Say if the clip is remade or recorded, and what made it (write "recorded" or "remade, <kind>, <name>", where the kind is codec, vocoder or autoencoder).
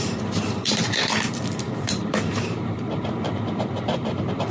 remade, vocoder, BigVGAN v2